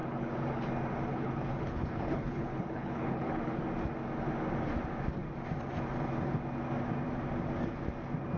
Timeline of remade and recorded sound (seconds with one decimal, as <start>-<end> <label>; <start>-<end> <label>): 0.0-0.7 remade; 0.7-1.1 recorded; 1.1-3.6 remade; 3.6-8.4 recorded